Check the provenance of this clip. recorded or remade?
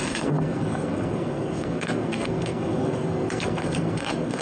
remade